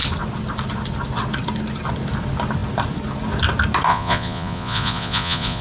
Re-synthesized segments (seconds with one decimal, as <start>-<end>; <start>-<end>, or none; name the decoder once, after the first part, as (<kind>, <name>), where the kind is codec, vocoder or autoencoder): 3.9-5.6 (vocoder, Vocos)